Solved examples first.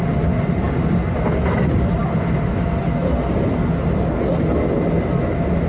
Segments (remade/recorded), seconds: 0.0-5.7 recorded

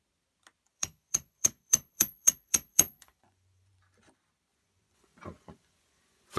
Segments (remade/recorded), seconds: 0.0-0.7 recorded; 0.7-3.7 remade; 3.7-4.5 recorded; 4.5-6.4 remade

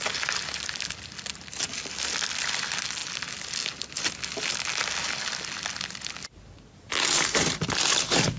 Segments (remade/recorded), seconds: 0.0-8.4 recorded

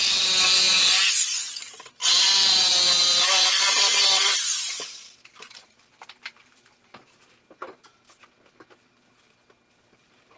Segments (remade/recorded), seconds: 0.0-2.0 recorded; 2.0-7.3 remade; 7.3-10.4 recorded